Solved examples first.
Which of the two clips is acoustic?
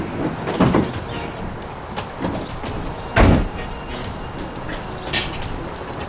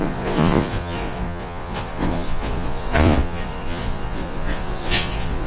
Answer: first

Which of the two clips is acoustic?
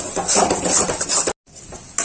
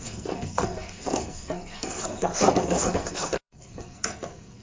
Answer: first